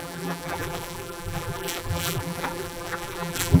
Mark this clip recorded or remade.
remade